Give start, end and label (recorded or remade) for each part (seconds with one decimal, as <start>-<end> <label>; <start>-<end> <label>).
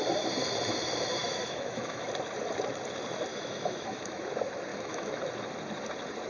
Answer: 0.0-1.2 recorded; 1.2-2.1 remade; 2.1-3.3 recorded; 3.3-4.2 remade; 4.2-4.7 recorded; 4.7-5.2 remade; 5.2-6.3 recorded